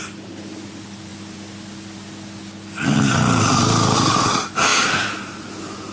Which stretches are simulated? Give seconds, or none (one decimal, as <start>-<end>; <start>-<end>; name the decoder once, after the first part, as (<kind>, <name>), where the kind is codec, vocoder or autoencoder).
4.7-5.9 (vocoder, BigVGAN v2)